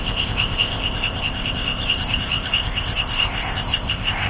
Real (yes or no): no